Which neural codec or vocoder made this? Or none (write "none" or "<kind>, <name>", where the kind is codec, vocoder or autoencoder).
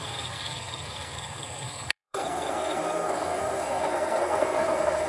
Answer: codec, SNAC